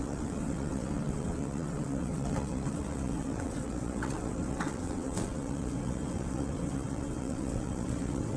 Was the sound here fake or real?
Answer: fake